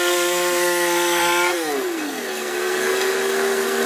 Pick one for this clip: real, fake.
fake